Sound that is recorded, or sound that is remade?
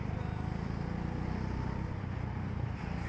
recorded